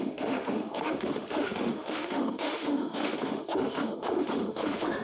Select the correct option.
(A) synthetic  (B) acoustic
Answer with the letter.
A